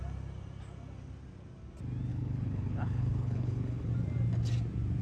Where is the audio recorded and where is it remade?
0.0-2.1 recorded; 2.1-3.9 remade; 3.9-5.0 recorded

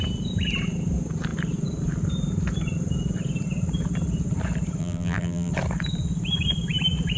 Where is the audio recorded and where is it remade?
0.0-4.8 recorded; 4.8-5.5 remade; 5.5-7.2 recorded

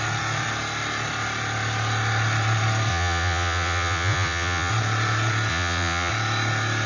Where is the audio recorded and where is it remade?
0.0-2.9 recorded; 2.9-4.7 remade; 4.7-5.5 recorded; 5.5-6.1 remade; 6.1-6.9 recorded

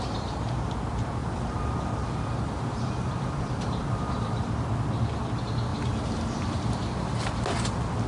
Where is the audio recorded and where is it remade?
0.0-1.2 recorded; 1.2-4.4 remade; 4.4-5.7 recorded; 5.7-6.7 remade; 6.7-8.1 recorded

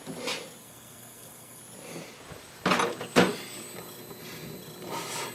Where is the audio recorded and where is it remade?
0.0-0.6 recorded; 0.6-1.6 remade; 1.6-5.3 recorded

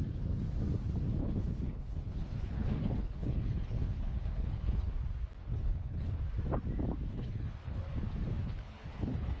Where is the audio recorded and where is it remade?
0.0-1.2 recorded; 1.2-4.9 remade; 4.9-5.4 recorded; 5.4-6.2 remade; 6.2-7.1 recorded; 7.1-7.9 remade; 7.9-8.4 recorded; 8.4-9.4 remade